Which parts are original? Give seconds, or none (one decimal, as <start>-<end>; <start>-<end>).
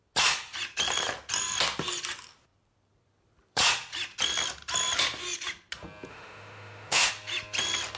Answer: 0.0-6.1; 7.1-8.0